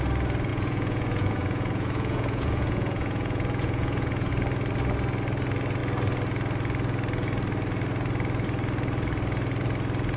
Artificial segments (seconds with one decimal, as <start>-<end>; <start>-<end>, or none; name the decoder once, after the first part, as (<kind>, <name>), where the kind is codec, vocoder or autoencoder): 0.5-4.3 (vocoder, Vocos)